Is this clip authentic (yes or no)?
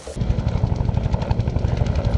yes